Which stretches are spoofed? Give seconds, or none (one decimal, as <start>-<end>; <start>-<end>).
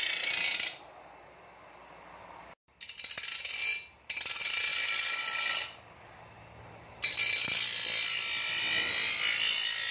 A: none